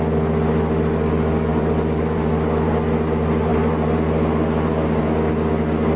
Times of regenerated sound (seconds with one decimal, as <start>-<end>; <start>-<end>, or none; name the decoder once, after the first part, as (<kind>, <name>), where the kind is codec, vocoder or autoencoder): 1.5-2.7 (vocoder, BigVGAN v2); 3.5-5.0

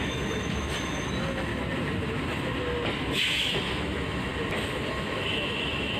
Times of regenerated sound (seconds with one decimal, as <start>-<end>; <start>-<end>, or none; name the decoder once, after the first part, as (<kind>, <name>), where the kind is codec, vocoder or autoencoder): 0.0-1.5 (autoencoder, DAC-VAE); 3.0-4.3; 4.9-6.0

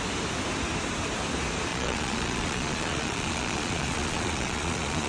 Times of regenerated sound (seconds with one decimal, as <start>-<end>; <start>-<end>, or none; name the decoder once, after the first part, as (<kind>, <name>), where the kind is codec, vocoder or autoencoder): 1.7-5.1 (vocoder, Vocos)

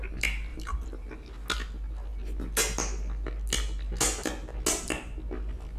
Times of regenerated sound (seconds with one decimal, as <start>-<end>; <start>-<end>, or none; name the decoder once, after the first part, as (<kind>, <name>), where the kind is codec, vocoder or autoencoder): 0.5-1.1 (vocoder, BigVGAN v2)

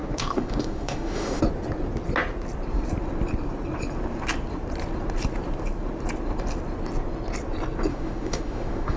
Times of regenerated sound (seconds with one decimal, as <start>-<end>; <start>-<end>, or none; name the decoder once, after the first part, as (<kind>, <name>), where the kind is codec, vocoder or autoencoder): 0.0-1.4 (autoencoder, DAC-VAE); 7.9-9.0

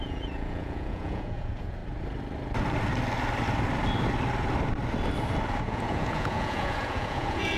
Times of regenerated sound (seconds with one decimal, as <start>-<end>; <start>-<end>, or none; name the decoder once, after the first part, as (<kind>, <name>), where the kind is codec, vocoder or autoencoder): 0.0-1.8 (vocoder, Vocos); 5.6-7.6

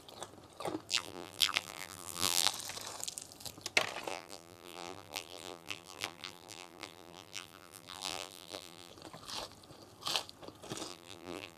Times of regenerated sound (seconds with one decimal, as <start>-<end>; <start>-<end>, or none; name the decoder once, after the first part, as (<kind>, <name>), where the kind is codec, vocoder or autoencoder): 0.9-2.5 (vocoder, BigVGAN v2); 4.1-8.9; 10.9-11.6

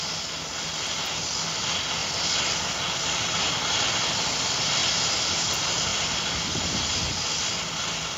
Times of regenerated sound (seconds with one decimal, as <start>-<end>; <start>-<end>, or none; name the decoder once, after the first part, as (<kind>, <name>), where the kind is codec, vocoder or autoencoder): 2.0-4.2 (vocoder, BigVGAN v2)